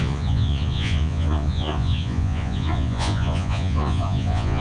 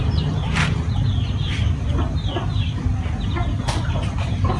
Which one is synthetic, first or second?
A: first